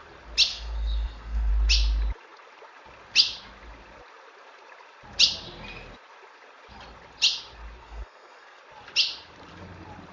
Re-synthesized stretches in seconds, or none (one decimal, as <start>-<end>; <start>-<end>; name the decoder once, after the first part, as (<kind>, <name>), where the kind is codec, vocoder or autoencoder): 0.5-1.5 (codec, SNAC); 7.8-8.6